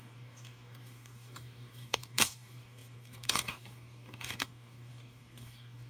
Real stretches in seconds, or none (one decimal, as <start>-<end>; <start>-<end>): none